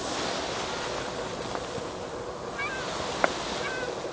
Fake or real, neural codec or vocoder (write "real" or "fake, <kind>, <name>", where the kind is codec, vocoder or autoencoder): real